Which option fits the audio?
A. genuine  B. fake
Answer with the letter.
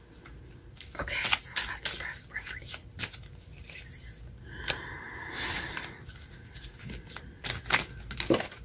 A